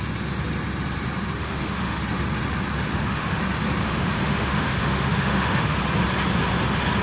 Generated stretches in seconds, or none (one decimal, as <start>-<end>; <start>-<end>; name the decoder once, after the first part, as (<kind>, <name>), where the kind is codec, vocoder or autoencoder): 1.4-2.0 (autoencoder, DAC-VAE); 2.9-3.4; 3.8-5.8

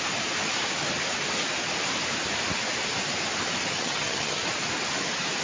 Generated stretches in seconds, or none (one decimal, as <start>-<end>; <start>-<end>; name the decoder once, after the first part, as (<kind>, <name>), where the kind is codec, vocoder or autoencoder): 3.8-4.4 (vocoder, HiFi-GAN)